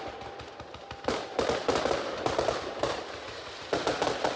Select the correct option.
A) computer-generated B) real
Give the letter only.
B